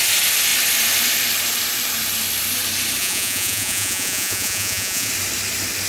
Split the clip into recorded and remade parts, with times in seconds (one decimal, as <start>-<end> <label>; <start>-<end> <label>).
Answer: 0.0-3.0 recorded; 3.0-5.1 remade; 5.1-5.9 recorded